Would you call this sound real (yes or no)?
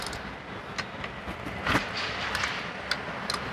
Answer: yes